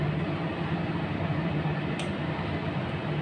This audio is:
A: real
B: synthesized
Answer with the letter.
A